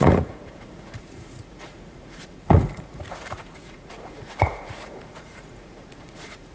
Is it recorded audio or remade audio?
remade